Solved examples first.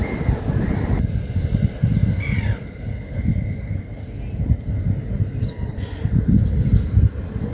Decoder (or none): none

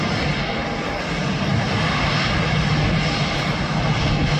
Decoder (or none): none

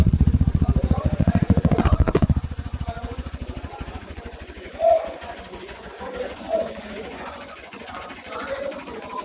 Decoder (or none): vocoder, Vocos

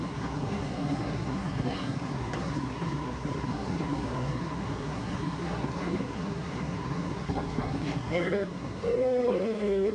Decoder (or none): codec, SNAC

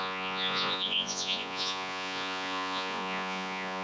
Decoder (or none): vocoder, Vocos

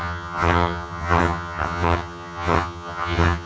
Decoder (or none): vocoder, HiFi-GAN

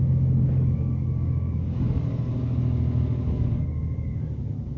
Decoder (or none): codec, DAC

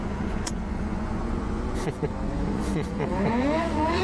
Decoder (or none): vocoder, Vocos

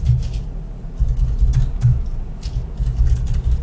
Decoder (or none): none